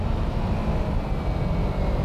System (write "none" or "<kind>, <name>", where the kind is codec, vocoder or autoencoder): none